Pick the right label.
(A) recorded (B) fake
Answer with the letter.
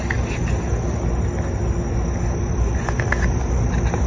A